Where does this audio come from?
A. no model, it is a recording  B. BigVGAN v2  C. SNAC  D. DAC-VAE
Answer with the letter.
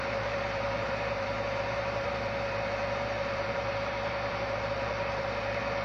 B